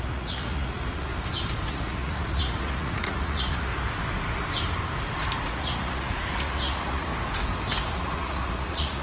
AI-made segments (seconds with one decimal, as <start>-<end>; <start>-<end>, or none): 0.0-1.1; 1.7-3.7; 5.5-7.1; 7.9-9.0